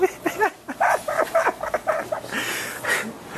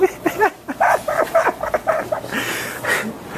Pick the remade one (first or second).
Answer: second